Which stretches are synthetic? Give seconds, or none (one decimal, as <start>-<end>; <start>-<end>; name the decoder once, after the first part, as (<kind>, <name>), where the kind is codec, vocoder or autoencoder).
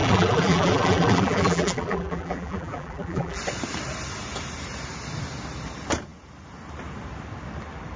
0.0-3.4 (vocoder, BigVGAN v2)